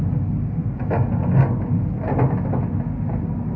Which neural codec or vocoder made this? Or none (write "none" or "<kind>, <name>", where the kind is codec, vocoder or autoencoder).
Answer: none